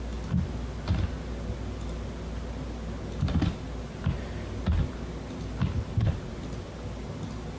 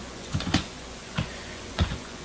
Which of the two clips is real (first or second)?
first